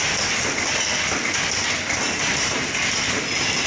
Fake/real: real